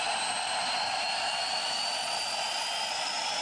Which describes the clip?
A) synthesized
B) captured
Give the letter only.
B